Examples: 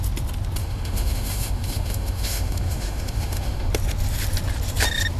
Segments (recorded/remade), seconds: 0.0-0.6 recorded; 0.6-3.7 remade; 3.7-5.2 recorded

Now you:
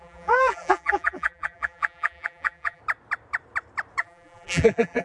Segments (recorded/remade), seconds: 0.0-2.8 remade; 2.8-4.0 recorded; 4.0-5.0 remade

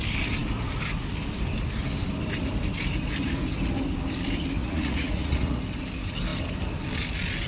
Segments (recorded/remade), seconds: 0.0-4.6 recorded; 4.6-5.6 remade; 5.6-7.5 recorded

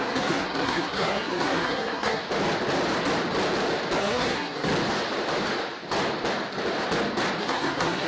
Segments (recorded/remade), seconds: 0.0-2.2 remade; 2.2-4.0 recorded; 4.0-4.7 remade; 4.7-7.4 recorded; 7.4-8.1 remade

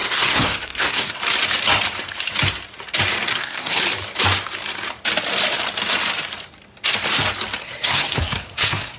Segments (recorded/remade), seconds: 0.0-1.2 remade; 1.2-3.3 recorded; 3.3-3.8 remade; 3.8-7.6 recorded; 7.6-9.0 remade

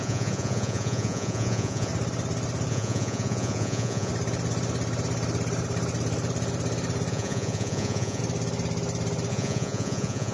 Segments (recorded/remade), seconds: 0.0-1.9 remade; 1.9-2.7 recorded; 2.7-4.1 remade; 4.1-7.1 recorded; 7.1-8.2 remade; 8.2-9.3 recorded; 9.3-10.3 remade

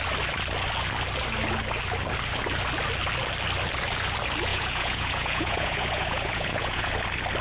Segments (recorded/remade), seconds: 0.0-4.5 recorded; 4.5-6.9 remade; 6.9-7.4 recorded

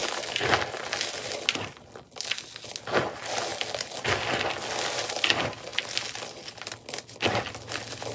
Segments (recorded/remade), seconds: 0.0-8.1 recorded